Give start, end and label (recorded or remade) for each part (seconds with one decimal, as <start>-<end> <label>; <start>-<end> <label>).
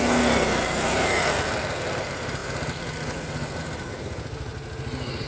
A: 0.0-5.3 recorded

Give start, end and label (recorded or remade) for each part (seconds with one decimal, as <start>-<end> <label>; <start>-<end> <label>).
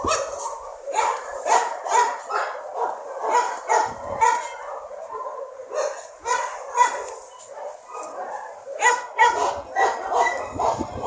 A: 0.0-0.7 recorded; 0.7-1.9 remade; 1.9-3.2 recorded; 3.2-3.7 remade; 3.7-11.1 recorded